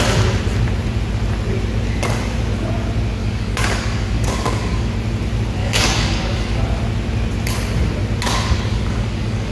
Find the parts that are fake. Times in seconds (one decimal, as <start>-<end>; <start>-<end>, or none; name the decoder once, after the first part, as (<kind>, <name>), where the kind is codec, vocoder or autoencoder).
3.2-4.9 (codec, DAC); 5.6-6.6; 8.3-9.5

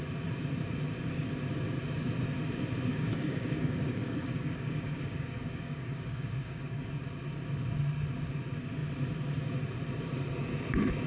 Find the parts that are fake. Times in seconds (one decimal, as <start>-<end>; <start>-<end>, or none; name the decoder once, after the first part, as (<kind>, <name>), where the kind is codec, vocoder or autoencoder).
2.9-6.9 (codec, DAC)

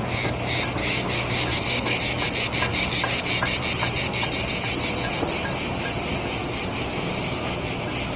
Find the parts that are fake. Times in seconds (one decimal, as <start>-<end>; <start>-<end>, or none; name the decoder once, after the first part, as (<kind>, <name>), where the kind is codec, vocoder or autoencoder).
0.8-2.0 (codec, DAC); 2.7-3.3; 6.4-7.4